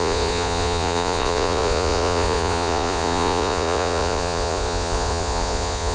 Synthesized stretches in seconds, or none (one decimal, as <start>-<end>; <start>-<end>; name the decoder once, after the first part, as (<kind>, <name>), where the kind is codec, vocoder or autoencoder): 0.0-5.9 (vocoder, Vocos)